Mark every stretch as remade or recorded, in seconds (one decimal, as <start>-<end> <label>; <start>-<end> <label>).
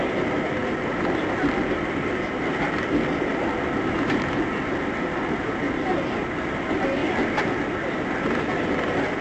0.0-9.2 recorded